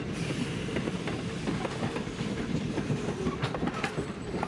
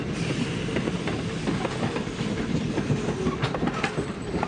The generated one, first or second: first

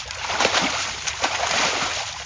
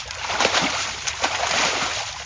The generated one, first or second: first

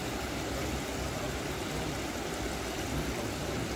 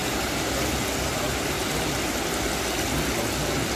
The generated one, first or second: first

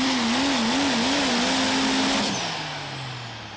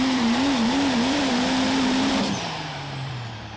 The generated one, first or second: second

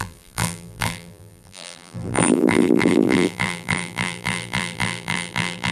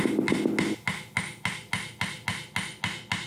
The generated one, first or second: first